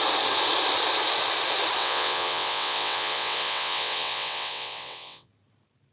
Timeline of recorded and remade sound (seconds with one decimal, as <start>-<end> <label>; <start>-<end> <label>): 0.0-1.8 recorded; 1.8-5.3 remade; 5.3-5.9 recorded